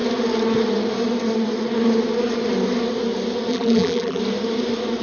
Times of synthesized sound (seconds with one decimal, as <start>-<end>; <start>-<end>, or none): 3.5-4.2